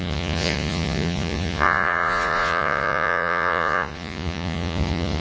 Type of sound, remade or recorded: remade